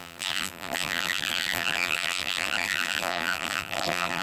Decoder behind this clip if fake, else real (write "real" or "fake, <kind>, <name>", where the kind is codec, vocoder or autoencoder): fake, vocoder, BigVGAN v2